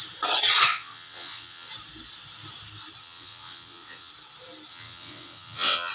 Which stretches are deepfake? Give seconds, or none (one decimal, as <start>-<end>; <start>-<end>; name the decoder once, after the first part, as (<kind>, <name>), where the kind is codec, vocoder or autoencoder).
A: 0.7-1.7 (vocoder, WaveNeXt); 3.0-4.1; 4.7-5.9